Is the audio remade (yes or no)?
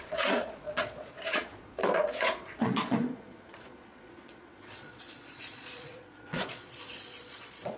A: yes